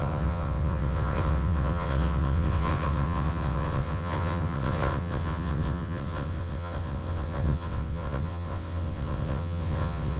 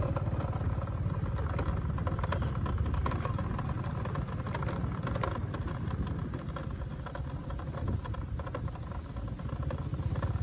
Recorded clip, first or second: second